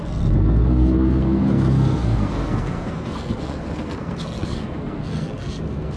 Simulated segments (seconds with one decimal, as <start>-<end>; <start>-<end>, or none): 0.0-6.0